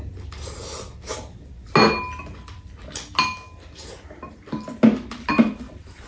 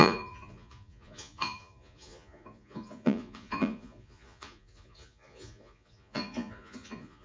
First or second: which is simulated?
second